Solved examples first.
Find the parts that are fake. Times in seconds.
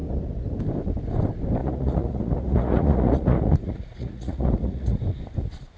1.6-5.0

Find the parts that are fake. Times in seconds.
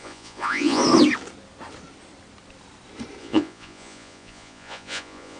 0.0-0.8; 3.2-5.4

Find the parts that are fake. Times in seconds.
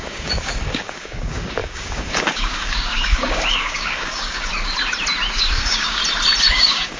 0.0-4.5; 5.3-6.0; 6.5-7.0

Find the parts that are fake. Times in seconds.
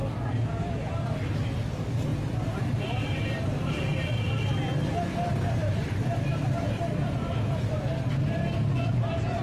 2.1-4.5; 5.6-6.8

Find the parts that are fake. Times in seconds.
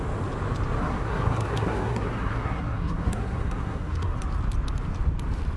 0.8-4.2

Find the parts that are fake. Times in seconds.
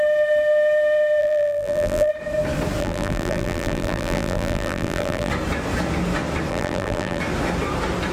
1.2-2.1; 2.8-5.3; 6.5-7.2